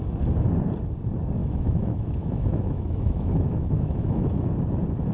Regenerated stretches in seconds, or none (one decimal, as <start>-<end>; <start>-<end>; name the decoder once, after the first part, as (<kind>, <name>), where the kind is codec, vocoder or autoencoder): 1.4-4.5 (autoencoder, DAC-VAE)